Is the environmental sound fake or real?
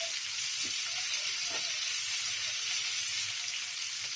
real